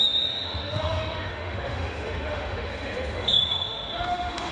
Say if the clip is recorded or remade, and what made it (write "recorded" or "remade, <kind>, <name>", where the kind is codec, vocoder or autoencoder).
remade, autoencoder, DAC-VAE